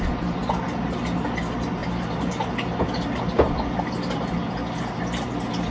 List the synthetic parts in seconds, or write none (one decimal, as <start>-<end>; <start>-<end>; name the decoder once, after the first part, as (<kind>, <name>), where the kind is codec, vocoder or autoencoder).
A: none